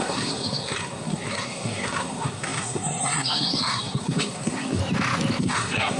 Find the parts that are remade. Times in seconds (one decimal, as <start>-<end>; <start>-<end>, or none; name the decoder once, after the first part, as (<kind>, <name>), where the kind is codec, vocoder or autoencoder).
0.0-4.8 (codec, SNAC); 5.4-6.0